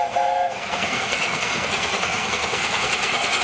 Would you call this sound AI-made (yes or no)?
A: yes